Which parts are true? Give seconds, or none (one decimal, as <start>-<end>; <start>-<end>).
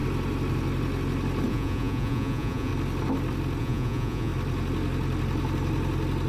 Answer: 0.0-1.5; 2.7-3.6; 4.3-6.3